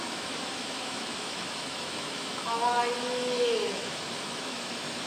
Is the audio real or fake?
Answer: fake